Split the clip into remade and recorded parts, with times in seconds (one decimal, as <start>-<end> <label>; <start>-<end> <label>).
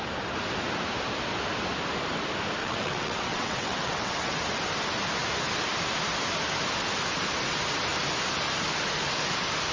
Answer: 0.0-2.6 recorded; 2.6-4.4 remade; 4.4-9.7 recorded